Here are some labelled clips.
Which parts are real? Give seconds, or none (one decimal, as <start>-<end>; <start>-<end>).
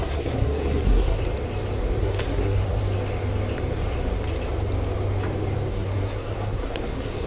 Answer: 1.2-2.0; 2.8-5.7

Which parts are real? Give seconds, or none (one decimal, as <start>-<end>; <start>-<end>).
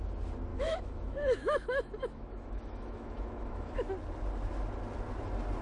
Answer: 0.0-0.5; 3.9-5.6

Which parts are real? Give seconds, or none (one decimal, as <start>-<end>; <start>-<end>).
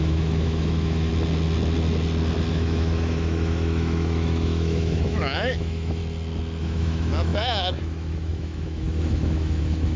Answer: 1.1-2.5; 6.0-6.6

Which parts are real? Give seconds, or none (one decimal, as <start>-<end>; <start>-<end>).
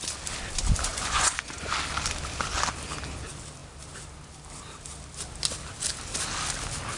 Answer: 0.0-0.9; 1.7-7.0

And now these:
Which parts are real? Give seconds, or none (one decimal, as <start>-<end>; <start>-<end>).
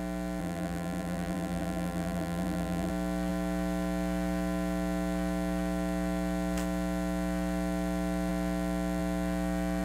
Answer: 0.0-0.4; 2.9-9.8